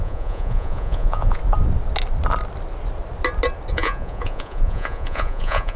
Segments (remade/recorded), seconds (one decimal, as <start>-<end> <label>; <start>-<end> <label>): 0.0-1.4 remade; 1.4-3.7 recorded; 3.7-5.8 remade